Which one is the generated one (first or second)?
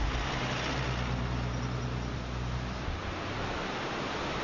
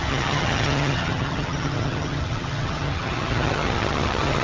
second